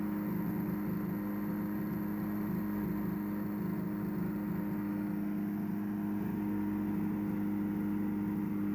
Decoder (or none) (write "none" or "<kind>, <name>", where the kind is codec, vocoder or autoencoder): none